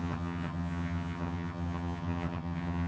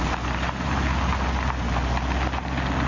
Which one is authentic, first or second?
second